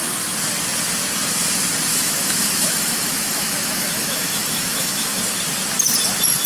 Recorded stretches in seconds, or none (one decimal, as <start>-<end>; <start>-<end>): 0.0-1.9; 5.2-6.5